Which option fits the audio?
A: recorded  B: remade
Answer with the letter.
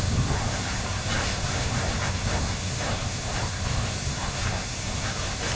B